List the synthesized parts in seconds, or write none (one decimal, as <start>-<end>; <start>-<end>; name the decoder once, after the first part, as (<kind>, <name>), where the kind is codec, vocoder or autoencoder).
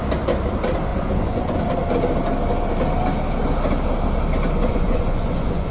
0.9-1.6 (vocoder, Vocos); 4.7-5.7